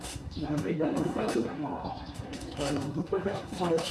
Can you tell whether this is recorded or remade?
remade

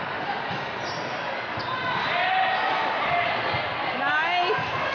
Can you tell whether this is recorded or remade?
recorded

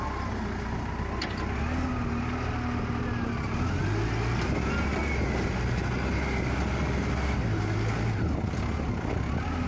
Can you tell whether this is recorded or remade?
recorded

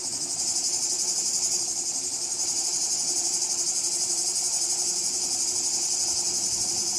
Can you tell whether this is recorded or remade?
recorded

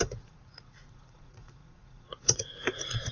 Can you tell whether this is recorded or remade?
remade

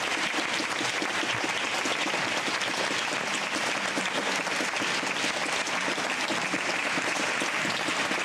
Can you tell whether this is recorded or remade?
recorded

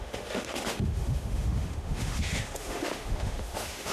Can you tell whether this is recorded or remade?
remade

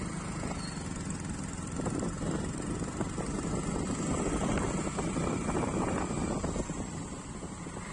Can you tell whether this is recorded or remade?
recorded